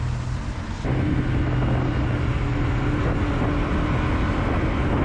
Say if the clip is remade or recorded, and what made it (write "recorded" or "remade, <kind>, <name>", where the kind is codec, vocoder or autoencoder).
recorded